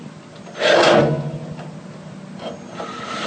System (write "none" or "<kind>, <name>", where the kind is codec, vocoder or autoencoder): none